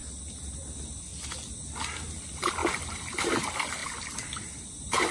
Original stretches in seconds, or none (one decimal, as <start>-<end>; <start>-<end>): 0.0-5.1